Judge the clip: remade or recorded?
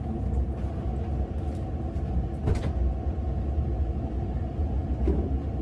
recorded